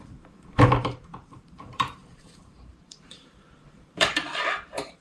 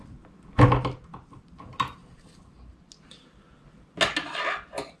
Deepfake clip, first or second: first